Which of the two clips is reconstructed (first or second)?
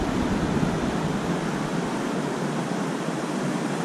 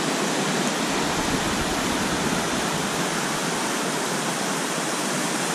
second